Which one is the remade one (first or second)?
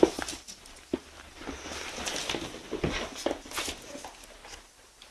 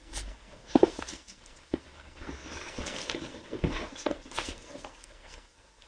second